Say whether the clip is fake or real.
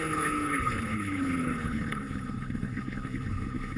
fake